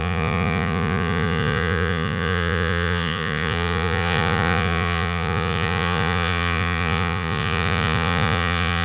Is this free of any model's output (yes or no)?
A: no